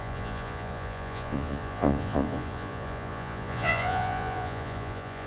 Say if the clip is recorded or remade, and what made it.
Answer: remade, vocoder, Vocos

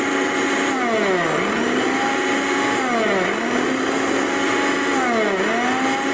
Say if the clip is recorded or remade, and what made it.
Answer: recorded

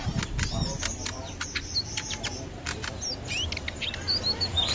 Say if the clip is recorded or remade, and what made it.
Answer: recorded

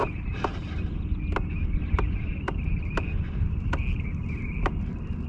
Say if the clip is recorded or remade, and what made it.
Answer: recorded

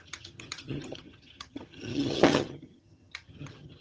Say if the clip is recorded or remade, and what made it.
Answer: remade, vocoder, HiFi-GAN